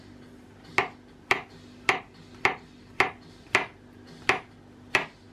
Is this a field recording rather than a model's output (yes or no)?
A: yes